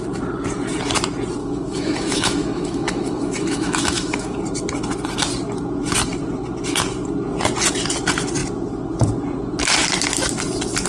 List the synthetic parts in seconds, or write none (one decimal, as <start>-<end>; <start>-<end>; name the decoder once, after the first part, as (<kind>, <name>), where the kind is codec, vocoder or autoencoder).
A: 1.4-4.4 (autoencoder, DAC-VAE)